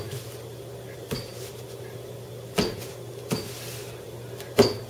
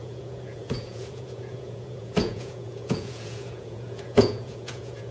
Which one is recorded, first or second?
first